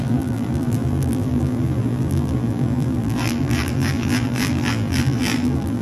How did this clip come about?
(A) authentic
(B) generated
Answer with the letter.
B